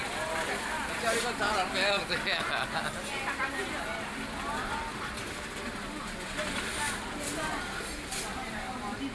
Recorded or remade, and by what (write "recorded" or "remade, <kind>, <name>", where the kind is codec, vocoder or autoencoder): recorded